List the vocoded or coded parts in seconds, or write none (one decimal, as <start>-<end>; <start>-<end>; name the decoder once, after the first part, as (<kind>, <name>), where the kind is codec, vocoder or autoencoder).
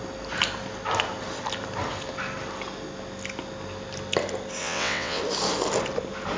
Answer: 4.6-5.2 (vocoder, WaveNeXt)